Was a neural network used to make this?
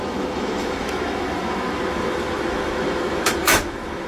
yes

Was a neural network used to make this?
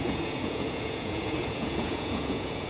yes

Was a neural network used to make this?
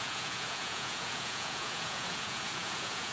yes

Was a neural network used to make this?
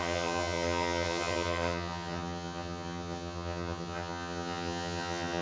yes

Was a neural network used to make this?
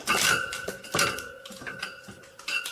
no